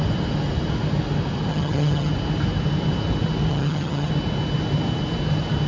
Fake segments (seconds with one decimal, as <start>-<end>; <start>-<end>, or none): 1.5-2.1; 3.5-4.1